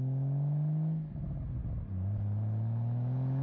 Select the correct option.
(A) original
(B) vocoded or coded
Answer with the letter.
A